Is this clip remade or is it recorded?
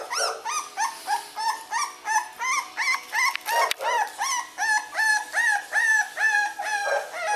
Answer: recorded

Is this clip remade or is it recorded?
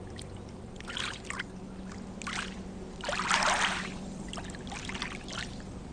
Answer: recorded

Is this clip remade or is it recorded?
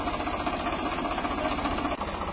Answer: recorded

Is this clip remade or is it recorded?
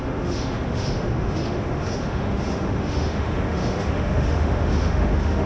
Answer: remade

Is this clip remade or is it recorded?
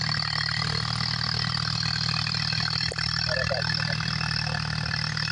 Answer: recorded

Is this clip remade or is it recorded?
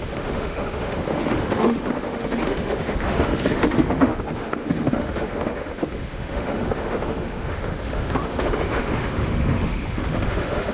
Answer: remade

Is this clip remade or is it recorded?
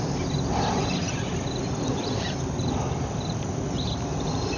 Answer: recorded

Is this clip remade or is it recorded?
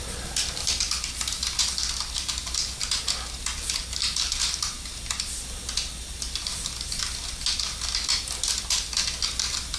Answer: recorded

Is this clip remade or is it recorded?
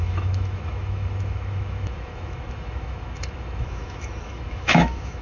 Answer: remade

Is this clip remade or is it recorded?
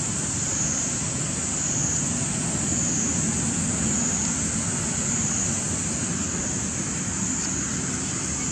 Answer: recorded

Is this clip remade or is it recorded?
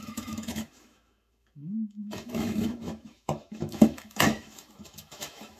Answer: remade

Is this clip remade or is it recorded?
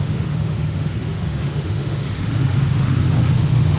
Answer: remade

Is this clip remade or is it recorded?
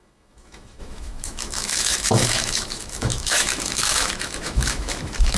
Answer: remade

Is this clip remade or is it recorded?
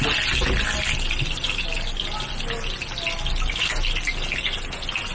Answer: recorded